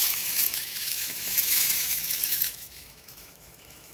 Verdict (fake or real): fake